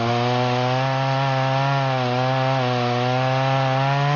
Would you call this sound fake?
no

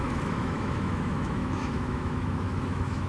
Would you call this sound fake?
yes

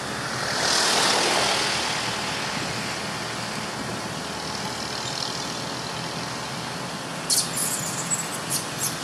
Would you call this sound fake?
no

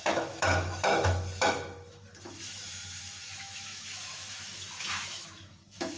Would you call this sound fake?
yes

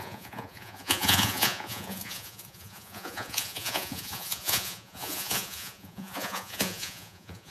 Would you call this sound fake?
yes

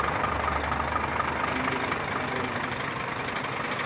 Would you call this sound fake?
no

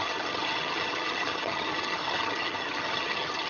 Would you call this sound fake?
yes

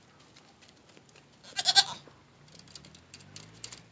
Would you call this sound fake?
no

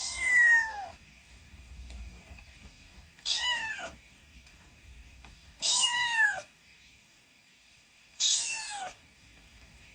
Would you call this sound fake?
yes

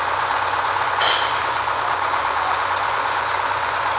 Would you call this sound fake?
yes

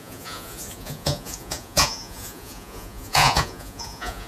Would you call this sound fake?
yes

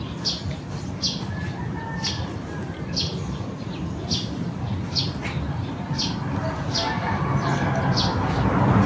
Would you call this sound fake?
no